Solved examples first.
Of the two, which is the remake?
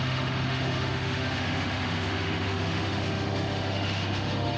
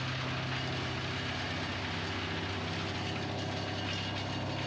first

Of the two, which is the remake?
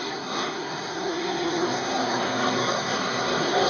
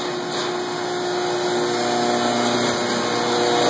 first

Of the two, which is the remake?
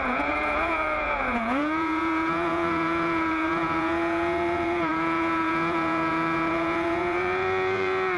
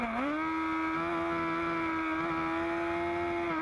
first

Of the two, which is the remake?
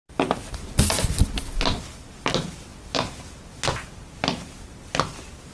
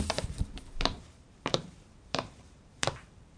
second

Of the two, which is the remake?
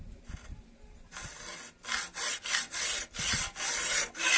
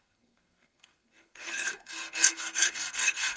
second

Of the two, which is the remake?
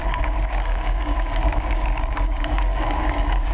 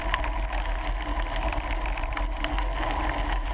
first